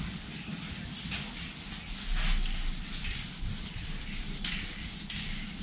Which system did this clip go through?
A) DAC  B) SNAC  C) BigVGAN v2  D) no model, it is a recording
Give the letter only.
D